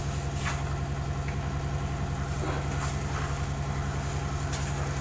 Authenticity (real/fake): real